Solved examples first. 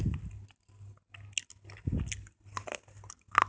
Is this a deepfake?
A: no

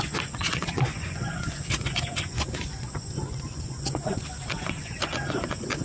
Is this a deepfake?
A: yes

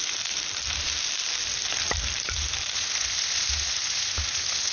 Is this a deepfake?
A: no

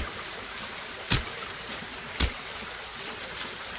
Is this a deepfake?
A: no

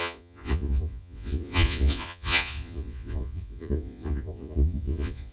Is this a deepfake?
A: yes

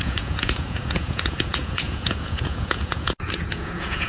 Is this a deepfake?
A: yes